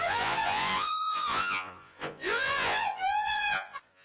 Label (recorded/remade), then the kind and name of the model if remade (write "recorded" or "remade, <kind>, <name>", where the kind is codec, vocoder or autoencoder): remade, vocoder, Vocos